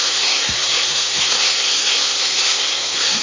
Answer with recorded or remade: remade